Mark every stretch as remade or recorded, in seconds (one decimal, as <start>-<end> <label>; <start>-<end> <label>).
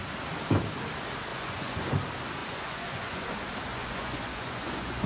0.0-1.3 recorded; 1.3-1.9 remade; 1.9-2.4 recorded; 2.4-3.3 remade; 3.3-3.7 recorded; 3.7-5.1 remade